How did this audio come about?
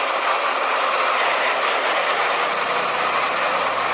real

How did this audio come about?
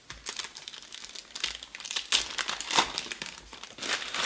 real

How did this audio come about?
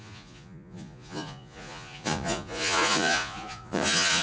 fake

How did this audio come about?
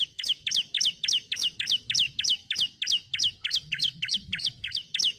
fake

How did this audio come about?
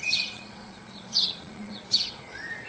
fake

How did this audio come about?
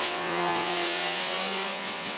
fake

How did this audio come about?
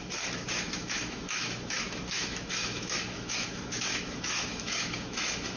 fake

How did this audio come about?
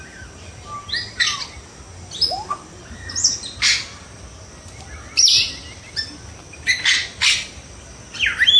real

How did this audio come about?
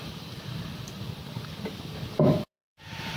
fake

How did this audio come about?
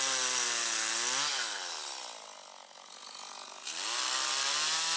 real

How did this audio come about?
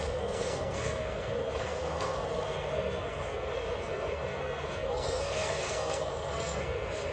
fake